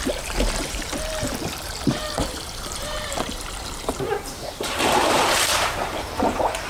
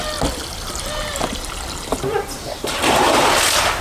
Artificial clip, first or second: first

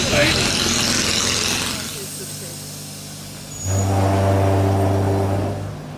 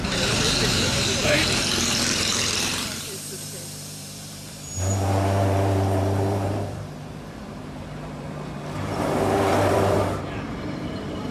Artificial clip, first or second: second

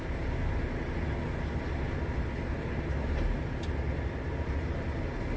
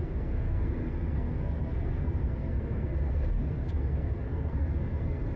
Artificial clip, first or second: second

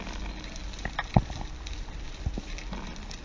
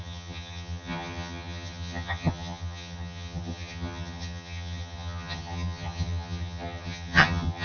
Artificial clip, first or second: second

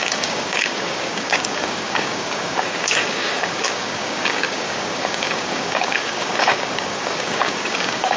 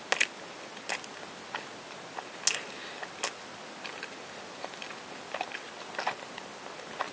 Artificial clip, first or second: first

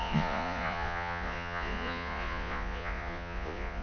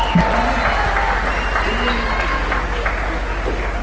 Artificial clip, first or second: first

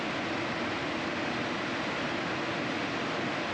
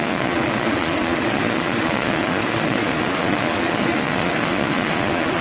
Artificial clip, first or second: second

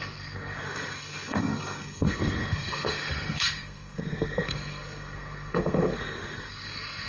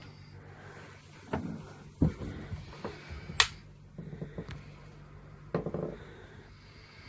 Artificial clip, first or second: first